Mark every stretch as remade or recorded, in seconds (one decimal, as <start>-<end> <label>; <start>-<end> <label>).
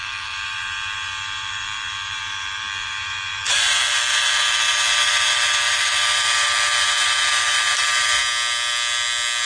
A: 0.0-8.2 remade; 8.2-9.5 recorded